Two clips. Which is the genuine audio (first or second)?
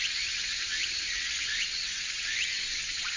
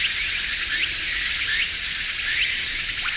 second